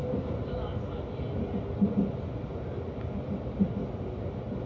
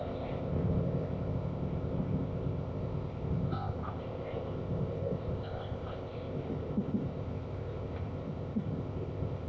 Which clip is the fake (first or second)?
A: second